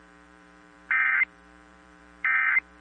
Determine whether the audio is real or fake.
fake